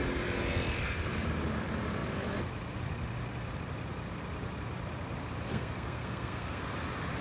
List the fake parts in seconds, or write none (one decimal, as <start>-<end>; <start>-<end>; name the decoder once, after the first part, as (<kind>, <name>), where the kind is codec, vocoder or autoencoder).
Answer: 5.5-6.6 (codec, SNAC)